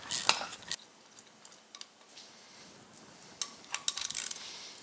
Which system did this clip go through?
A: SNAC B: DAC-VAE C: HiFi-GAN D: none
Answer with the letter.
D